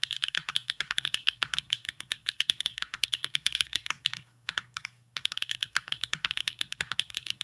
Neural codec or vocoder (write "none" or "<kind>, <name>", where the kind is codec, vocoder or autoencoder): codec, SNAC